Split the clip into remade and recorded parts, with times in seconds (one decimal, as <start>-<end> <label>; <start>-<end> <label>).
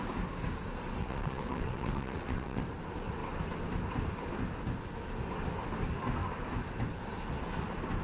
0.0-1.0 recorded; 1.0-2.6 remade; 2.6-8.0 recorded